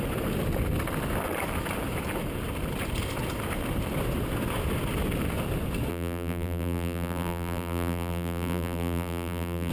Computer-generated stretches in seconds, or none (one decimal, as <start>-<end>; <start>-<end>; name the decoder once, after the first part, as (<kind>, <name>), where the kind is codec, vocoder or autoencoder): 5.9-9.7 (vocoder, BigVGAN v2)